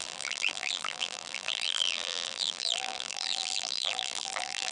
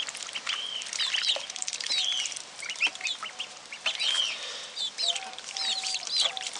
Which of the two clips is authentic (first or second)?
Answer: second